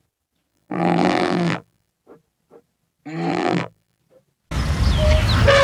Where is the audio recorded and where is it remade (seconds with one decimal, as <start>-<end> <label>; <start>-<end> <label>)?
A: 0.0-0.5 recorded; 0.5-1.9 remade; 1.9-3.3 recorded; 3.3-4.0 remade; 4.0-5.6 recorded

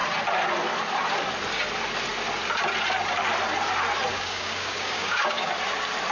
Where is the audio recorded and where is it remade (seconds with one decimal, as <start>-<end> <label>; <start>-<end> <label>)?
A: 0.0-4.1 recorded; 4.1-5.5 remade; 5.5-6.1 recorded

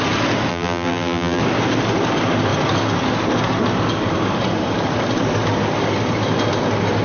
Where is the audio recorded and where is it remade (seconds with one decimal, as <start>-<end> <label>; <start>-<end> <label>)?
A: 0.0-0.5 recorded; 0.5-1.4 remade; 1.4-7.0 recorded